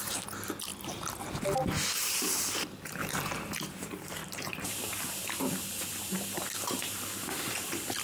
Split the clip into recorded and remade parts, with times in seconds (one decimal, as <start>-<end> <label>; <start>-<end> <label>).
0.0-0.7 remade; 0.7-2.0 recorded; 2.0-8.0 remade